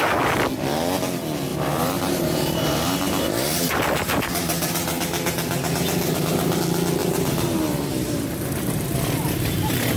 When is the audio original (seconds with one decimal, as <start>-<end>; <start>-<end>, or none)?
0.0-1.5; 6.6-7.0